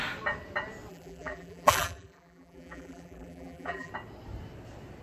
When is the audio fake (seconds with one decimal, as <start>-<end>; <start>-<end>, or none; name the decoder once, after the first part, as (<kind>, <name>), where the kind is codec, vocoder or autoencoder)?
0.9-3.9 (vocoder, BigVGAN v2)